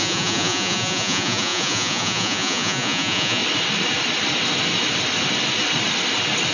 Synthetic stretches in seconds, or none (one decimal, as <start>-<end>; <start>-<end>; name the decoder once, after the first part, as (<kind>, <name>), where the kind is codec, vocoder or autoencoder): 0.0-3.4 (vocoder, Vocos)